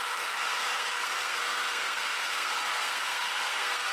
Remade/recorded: remade